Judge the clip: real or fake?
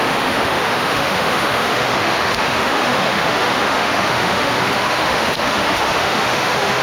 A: fake